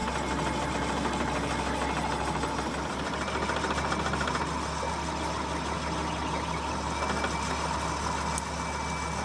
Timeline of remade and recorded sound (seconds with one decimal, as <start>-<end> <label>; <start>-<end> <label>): 0.0-9.2 recorded